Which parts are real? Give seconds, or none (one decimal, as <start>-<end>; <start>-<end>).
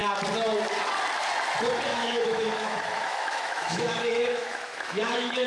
0.0-1.9